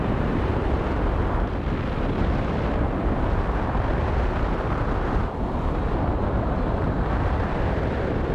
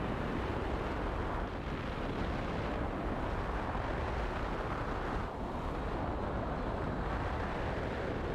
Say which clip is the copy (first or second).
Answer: first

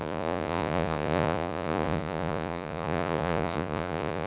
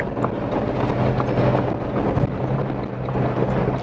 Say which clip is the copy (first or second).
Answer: first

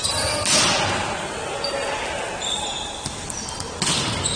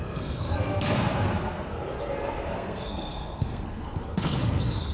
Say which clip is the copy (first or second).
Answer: second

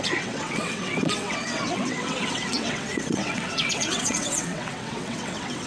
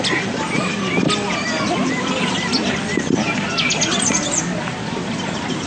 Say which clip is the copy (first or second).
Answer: first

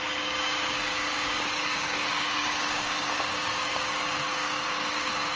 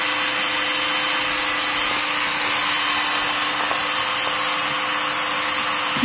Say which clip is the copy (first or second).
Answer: first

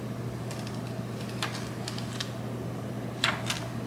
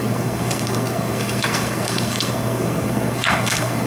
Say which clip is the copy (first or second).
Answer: second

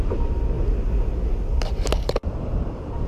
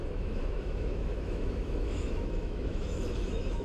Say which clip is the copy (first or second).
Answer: second